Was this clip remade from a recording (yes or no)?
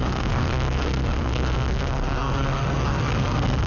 yes